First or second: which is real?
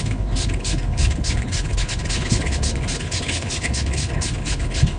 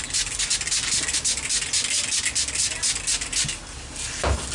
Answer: second